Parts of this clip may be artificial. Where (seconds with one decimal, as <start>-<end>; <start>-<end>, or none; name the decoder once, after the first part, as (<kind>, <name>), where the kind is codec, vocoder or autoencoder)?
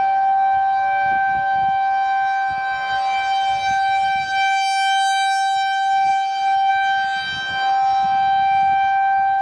none